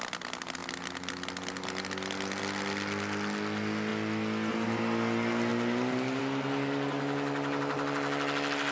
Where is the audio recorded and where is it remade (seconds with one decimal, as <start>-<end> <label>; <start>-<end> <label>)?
0.0-5.5 recorded; 5.5-6.2 remade; 6.2-8.7 recorded